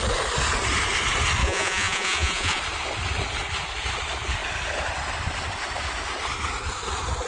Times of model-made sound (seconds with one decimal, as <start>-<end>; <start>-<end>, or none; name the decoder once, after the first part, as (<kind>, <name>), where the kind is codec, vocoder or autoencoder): 1.4-2.6 (vocoder, Vocos)